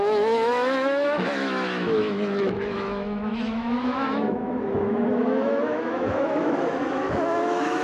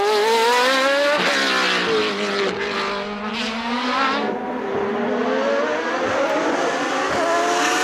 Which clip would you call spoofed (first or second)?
first